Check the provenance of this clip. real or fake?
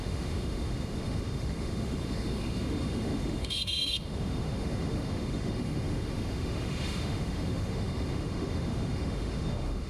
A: fake